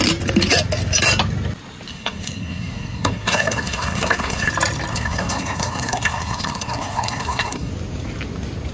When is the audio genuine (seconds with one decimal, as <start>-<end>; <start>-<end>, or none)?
0.0-1.9; 4.5-4.9; 7.7-8.7